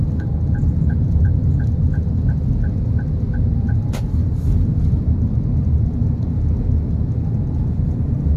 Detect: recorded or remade recorded